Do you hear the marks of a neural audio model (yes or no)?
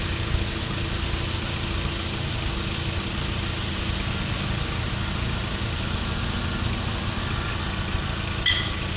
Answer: no